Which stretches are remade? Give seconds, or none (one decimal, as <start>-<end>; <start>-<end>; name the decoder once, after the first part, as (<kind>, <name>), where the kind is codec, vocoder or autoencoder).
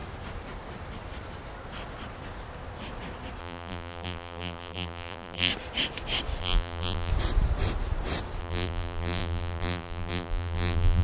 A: 3.4-5.5 (vocoder, BigVGAN v2); 6.4-7.1; 8.4-11.0